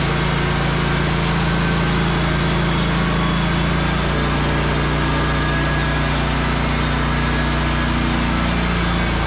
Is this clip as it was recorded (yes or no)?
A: yes